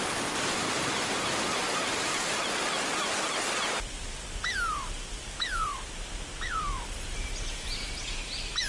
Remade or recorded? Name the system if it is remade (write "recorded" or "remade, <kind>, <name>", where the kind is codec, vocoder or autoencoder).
recorded